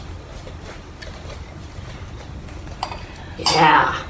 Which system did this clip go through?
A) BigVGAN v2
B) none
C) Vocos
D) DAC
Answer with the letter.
B